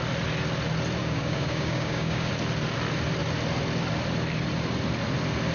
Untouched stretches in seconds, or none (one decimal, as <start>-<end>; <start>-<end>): 0.0-1.0; 2.3-5.5